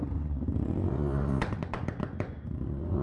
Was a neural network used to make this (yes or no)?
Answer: yes